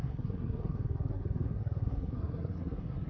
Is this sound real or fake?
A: fake